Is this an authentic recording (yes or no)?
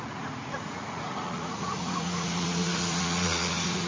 no